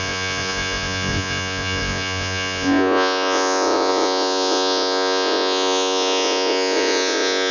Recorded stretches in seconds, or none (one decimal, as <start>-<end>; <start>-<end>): none